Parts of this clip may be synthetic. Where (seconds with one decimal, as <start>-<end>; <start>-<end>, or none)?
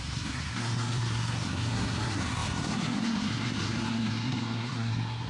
0.0-5.3